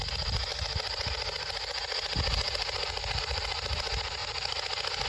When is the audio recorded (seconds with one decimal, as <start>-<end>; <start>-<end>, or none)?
0.0-4.2